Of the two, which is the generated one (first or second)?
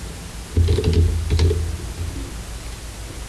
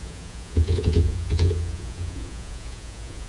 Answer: second